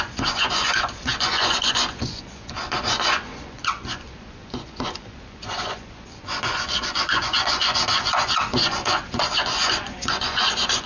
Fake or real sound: fake